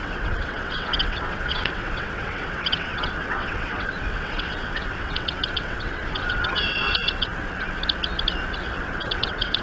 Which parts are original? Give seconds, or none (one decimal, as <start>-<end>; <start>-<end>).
7.3-8.7